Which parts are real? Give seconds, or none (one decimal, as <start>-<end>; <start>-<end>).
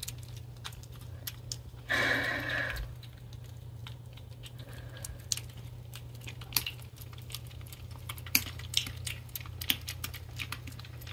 0.0-11.1